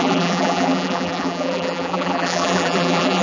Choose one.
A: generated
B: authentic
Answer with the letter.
A